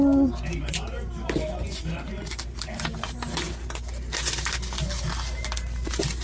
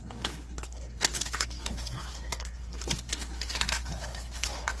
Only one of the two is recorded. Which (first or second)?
first